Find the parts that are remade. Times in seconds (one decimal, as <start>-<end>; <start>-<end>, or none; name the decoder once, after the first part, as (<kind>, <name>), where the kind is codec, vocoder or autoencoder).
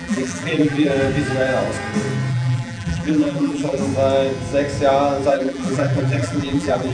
0.0-0.9 (vocoder, BigVGAN v2); 2.3-3.8; 5.3-6.9